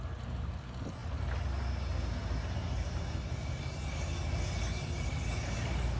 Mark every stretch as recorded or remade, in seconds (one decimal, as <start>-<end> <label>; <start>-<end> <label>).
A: 0.0-6.0 recorded